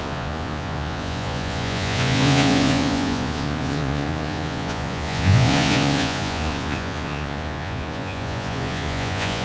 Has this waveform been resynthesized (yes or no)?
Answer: yes